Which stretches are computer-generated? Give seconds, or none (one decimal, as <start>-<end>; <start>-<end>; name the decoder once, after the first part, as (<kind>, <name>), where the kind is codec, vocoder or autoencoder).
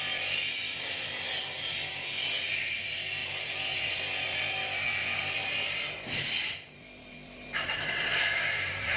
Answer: 3.2-4.0 (vocoder, BigVGAN v2); 8.1-9.0